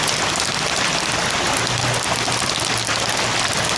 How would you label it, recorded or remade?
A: recorded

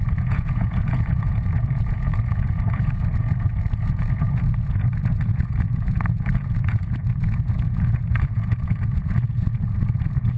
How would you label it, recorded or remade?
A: remade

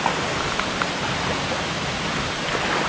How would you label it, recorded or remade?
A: recorded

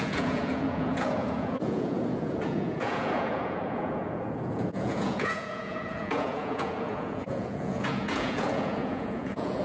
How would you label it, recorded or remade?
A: remade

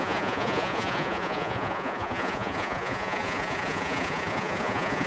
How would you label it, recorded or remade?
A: remade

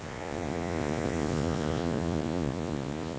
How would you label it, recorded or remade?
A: remade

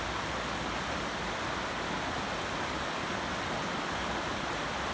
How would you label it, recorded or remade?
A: recorded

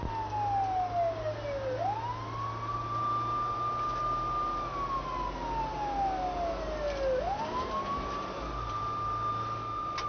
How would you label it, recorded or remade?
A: recorded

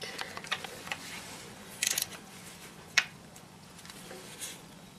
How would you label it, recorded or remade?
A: remade